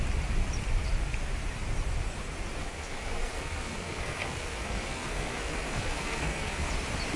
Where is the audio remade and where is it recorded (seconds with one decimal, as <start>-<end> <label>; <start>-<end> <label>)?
0.0-2.6 recorded; 2.6-6.7 remade; 6.7-7.2 recorded